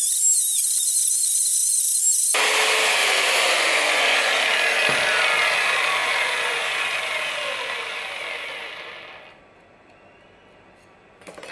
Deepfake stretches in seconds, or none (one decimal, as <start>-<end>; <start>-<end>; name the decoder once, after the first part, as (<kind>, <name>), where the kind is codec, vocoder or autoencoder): 3.0-4.3 (vocoder, Vocos); 6.0-7.0